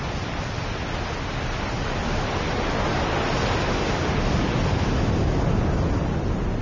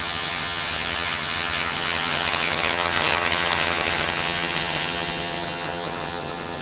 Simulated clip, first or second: second